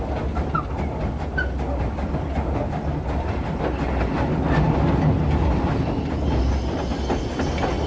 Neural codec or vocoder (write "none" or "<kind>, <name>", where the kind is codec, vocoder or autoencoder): none